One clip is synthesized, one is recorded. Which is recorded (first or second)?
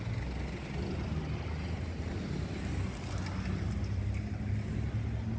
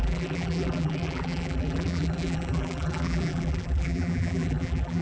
first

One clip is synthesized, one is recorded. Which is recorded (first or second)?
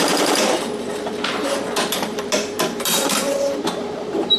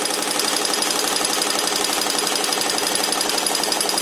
second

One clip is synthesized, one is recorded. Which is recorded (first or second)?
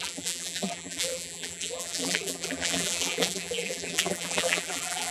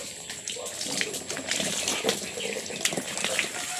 second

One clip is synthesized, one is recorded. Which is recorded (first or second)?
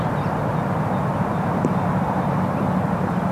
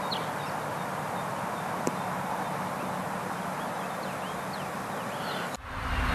second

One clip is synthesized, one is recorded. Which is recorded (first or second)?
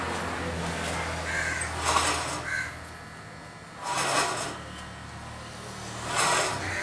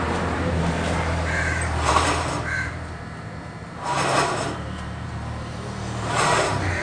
first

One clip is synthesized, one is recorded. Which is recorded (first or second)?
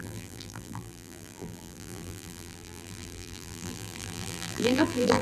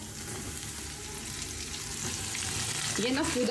second